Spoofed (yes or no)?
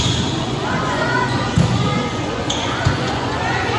yes